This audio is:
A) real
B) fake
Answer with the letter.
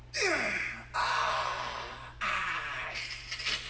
A